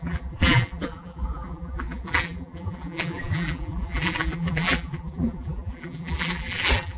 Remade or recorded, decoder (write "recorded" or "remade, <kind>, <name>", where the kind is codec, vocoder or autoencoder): remade, vocoder, BigVGAN v2